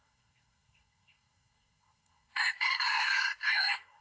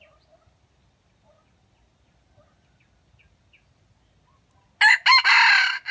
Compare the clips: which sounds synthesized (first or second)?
first